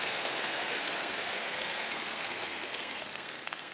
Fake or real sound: fake